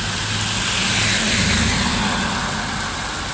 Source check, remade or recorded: recorded